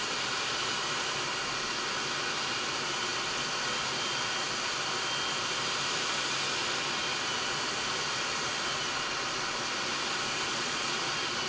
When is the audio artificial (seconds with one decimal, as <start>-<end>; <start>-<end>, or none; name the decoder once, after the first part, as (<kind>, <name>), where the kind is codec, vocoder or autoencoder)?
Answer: 10.5-11.1 (vocoder, Vocos)